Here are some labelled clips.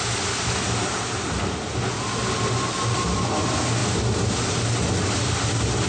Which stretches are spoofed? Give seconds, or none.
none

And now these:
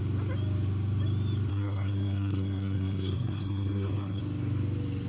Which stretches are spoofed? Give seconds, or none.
1.5-4.2 (codec, SNAC)

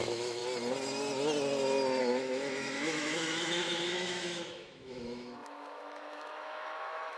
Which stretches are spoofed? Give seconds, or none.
0.0-0.4 (autoencoder, DAC-VAE); 2.0-7.2

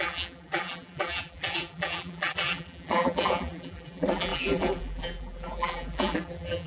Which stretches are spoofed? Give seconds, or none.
0.0-6.7 (vocoder, BigVGAN v2)